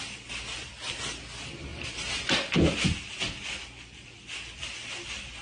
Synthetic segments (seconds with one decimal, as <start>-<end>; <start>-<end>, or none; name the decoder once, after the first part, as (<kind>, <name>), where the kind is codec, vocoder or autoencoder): none